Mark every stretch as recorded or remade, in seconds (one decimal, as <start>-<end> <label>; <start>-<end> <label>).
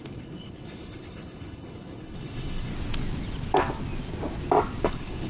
0.0-2.7 remade; 2.7-4.8 recorded; 4.8-5.3 remade